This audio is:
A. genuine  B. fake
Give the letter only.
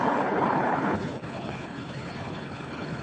B